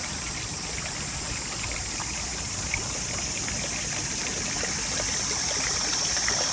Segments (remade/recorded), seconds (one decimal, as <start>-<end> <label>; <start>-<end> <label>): 0.0-6.5 recorded